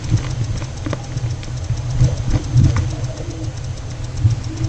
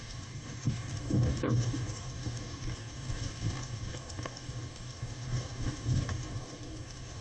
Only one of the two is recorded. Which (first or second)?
first